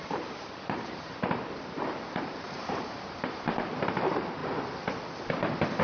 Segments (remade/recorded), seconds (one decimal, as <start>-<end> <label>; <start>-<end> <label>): 0.0-4.4 remade; 4.4-5.3 recorded; 5.3-5.8 remade